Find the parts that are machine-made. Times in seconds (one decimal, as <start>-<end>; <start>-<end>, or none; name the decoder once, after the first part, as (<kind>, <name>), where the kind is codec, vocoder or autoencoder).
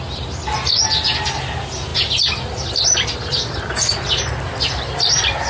none